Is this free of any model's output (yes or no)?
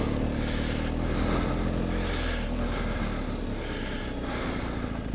yes